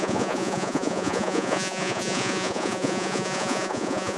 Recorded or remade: remade